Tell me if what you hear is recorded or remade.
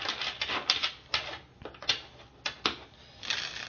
recorded